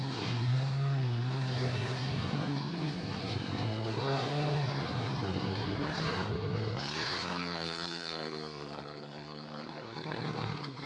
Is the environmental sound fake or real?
fake